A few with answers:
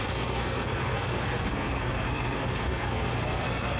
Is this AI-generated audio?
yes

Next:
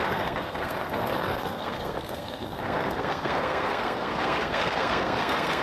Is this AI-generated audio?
yes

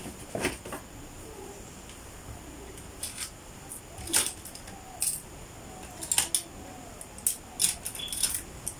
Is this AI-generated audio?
no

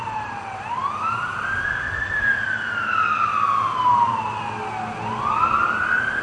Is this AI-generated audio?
no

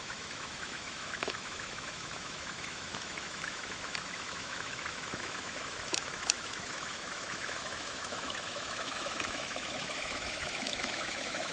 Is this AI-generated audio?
yes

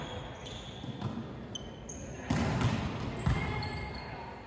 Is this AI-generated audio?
no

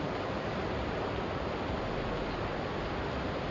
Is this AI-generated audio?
no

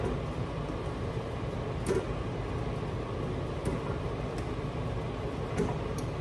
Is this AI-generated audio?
yes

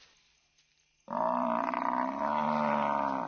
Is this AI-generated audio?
no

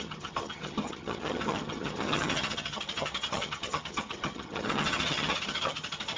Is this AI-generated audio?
yes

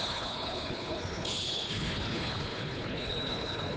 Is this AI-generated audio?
yes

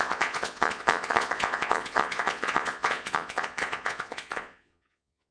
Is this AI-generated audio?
yes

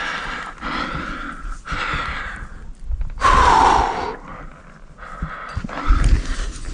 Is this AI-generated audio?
no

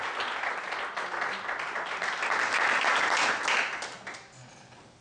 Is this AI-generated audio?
no